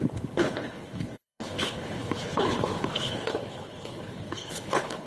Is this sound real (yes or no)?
no